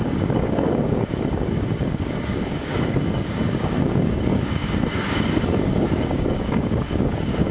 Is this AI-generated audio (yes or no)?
yes